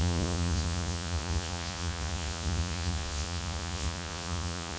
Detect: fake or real fake